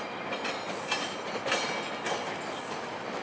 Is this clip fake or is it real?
real